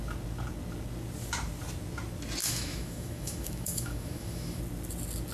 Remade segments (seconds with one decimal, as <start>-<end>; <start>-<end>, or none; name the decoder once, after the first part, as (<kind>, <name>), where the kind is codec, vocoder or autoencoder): 2.4-4.6 (autoencoder, DAC-VAE)